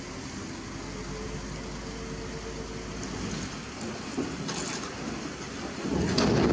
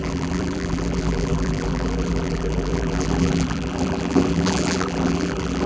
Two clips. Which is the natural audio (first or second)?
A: first